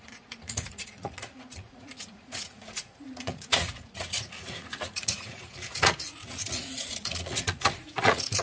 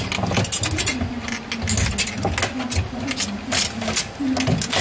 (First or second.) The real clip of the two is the second